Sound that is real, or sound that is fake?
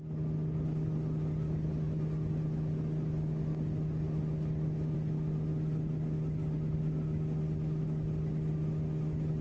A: real